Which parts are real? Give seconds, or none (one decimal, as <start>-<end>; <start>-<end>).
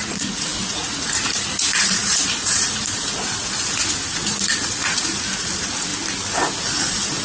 5.9-6.6